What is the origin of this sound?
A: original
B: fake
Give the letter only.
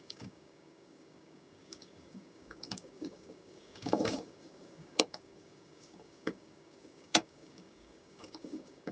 B